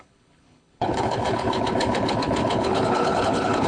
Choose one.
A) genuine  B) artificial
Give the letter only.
B